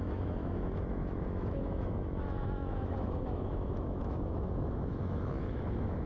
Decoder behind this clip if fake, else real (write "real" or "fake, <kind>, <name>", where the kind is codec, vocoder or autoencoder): fake, autoencoder, DAC-VAE